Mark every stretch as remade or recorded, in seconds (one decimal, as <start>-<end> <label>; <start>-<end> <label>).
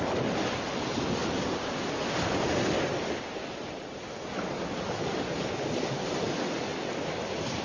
0.0-7.6 recorded